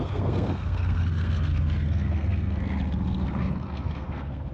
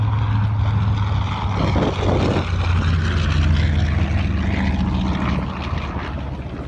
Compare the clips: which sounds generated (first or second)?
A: first